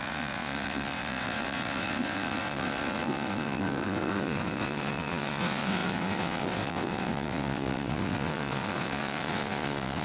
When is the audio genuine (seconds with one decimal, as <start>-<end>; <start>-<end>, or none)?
none